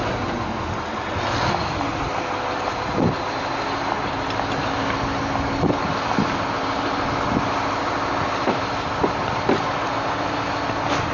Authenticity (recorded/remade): recorded